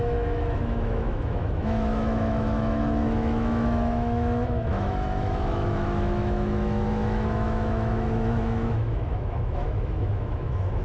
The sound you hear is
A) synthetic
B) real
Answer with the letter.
A